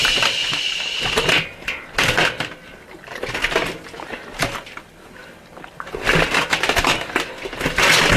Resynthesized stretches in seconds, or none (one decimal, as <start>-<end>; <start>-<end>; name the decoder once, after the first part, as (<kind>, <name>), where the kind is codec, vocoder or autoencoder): 0.0-0.9 (vocoder, BigVGAN v2)